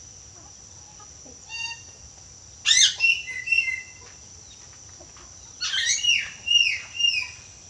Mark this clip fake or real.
real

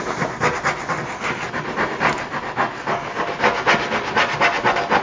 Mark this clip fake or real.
real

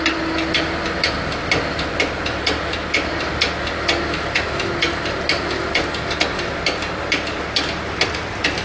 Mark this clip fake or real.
real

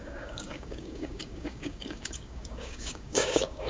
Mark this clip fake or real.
fake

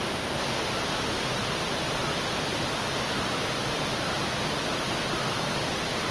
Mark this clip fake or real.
real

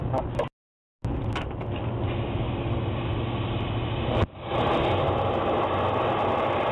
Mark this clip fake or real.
real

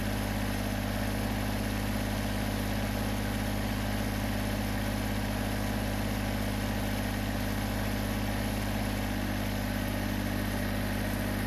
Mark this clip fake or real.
real